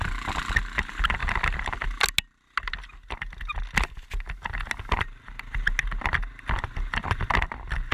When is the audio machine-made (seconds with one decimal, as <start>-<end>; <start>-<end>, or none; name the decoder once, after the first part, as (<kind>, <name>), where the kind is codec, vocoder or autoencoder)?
none